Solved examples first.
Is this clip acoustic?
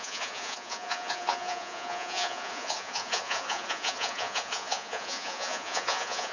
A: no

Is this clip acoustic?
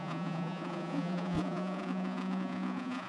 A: no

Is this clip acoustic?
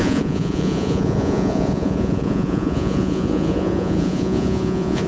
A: no